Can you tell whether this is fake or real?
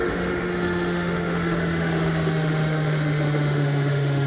fake